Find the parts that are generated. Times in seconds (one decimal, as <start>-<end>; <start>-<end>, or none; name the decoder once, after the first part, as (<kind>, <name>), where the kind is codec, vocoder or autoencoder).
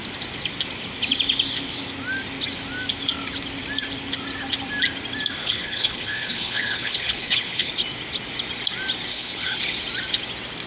5.4-7.7 (codec, HILCodec); 9.1-9.6